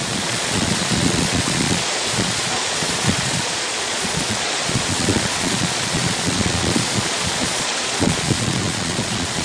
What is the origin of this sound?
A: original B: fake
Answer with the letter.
B